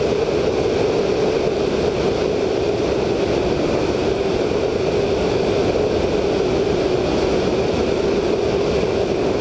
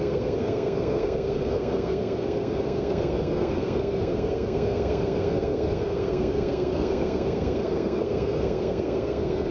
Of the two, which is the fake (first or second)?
second